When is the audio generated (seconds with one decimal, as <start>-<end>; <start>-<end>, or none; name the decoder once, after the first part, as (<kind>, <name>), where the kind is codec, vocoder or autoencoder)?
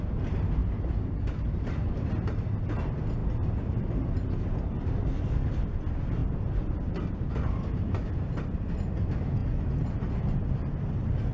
none